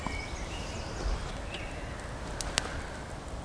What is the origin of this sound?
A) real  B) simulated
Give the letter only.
A